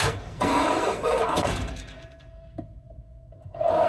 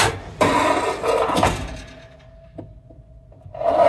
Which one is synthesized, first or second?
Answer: first